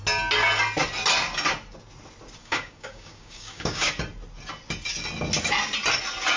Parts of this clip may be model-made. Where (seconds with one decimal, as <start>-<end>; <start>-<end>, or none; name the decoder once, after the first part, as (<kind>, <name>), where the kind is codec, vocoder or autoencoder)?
2.4-3.9 (codec, DAC)